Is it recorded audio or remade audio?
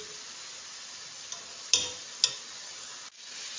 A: recorded